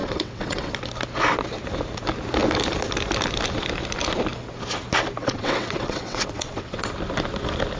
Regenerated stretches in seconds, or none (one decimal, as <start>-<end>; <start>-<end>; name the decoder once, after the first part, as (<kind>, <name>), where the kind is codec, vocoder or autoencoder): 0.0-0.7 (vocoder, WaveNeXt); 5.2-6.9